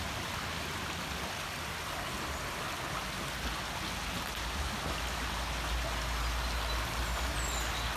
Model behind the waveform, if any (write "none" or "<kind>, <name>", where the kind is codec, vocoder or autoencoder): none